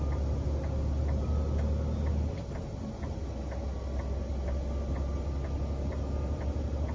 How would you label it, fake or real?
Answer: real